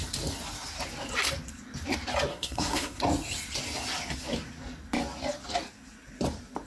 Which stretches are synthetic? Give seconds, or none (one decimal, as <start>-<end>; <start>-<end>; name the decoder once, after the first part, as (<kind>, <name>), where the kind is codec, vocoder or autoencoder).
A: 2.3-3.0 (codec, SNAC)